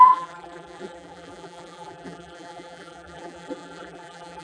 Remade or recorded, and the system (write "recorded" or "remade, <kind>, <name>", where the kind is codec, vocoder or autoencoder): remade, vocoder, BigVGAN v2